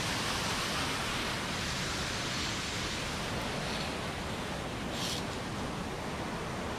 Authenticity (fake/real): real